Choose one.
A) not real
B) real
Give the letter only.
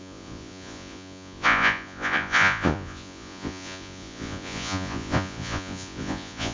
A